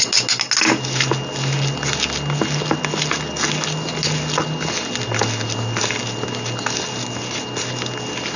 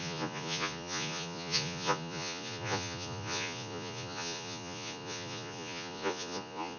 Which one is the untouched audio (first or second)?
first